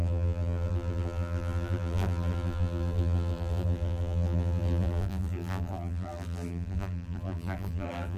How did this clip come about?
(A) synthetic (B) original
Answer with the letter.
A